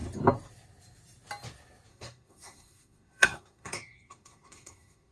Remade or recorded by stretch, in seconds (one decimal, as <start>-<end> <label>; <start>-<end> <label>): 0.0-1.9 recorded; 1.9-5.1 remade